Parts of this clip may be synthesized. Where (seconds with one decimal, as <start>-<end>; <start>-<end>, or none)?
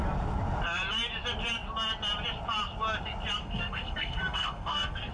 3.4-5.1